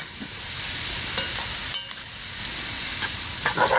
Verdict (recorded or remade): recorded